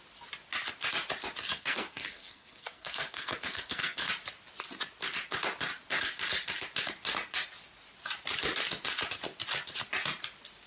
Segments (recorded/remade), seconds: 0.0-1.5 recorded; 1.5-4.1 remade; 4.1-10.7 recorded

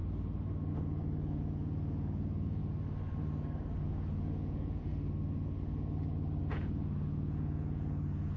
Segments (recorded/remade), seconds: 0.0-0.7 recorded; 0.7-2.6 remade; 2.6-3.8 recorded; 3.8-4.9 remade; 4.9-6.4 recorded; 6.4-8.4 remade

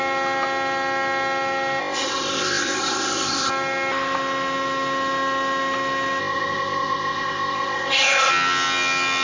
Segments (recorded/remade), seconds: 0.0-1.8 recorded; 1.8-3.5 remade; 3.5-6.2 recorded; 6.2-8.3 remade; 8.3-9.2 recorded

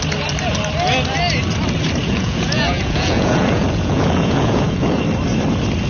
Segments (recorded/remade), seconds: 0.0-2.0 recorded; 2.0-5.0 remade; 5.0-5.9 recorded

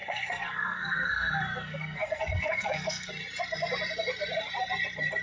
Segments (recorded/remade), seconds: 0.0-3.1 remade; 3.1-5.2 recorded

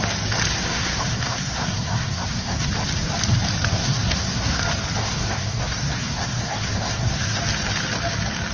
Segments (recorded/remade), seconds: 0.0-0.5 recorded; 0.5-2.7 remade; 2.7-3.8 recorded; 3.8-4.6 remade; 4.6-5.0 recorded; 5.0-7.4 remade; 7.4-8.5 recorded